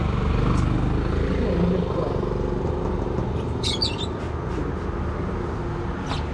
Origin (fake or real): real